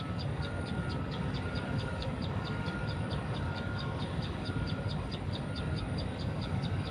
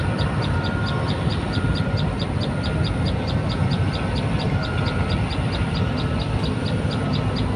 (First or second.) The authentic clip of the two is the second